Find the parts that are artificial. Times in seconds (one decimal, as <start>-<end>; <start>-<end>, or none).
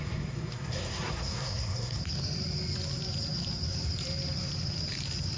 0.0-2.0